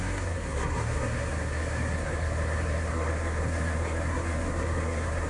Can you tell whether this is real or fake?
fake